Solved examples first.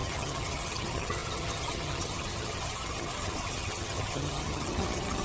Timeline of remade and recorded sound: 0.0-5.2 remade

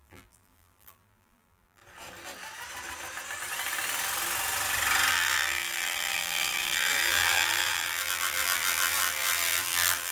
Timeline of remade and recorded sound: 0.0-1.8 remade; 1.8-5.1 recorded; 5.1-10.1 remade